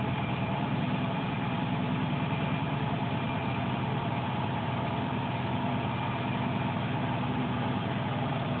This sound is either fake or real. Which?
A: fake